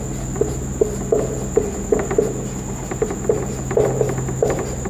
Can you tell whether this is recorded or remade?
recorded